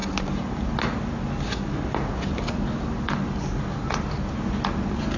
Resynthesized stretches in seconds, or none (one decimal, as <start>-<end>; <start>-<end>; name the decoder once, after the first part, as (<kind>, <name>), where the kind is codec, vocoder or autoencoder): none